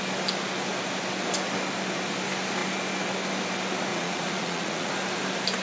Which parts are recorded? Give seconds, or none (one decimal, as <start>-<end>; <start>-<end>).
0.0-3.9; 4.9-5.6